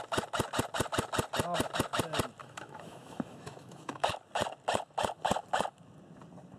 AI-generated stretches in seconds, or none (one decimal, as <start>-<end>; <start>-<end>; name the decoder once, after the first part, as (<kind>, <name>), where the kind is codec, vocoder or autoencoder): 2.4-4.1 (autoencoder, DAC-VAE)

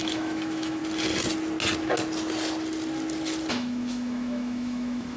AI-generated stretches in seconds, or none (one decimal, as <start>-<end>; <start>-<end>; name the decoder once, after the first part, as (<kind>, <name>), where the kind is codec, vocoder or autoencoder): 0.0-0.8 (autoencoder, DAC-VAE); 3.5-5.2